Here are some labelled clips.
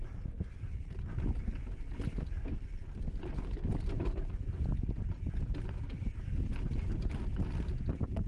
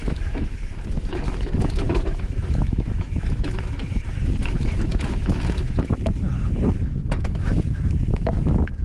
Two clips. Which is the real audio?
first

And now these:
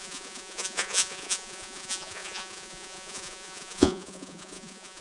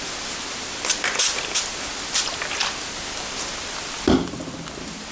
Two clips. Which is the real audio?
second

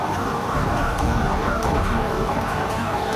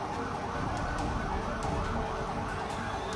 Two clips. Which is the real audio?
second